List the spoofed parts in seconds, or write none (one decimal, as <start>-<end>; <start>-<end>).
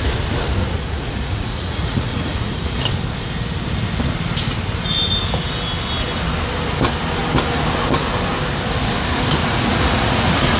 0.6-2.8; 9.4-10.6